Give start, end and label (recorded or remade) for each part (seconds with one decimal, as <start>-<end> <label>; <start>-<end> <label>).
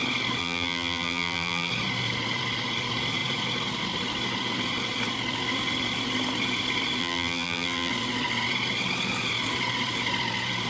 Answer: 0.0-0.4 recorded; 0.4-1.7 remade; 1.7-7.0 recorded; 7.0-7.9 remade; 7.9-10.7 recorded